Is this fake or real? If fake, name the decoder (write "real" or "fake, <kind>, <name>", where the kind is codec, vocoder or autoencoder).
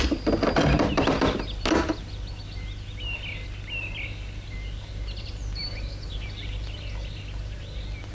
real